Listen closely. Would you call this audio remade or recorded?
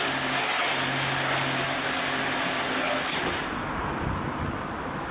recorded